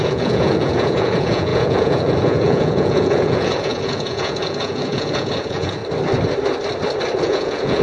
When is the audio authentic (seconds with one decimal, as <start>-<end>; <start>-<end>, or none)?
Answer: 5.8-7.2